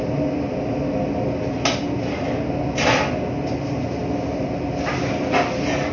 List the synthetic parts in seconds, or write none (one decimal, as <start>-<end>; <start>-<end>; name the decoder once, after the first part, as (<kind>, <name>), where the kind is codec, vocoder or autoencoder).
none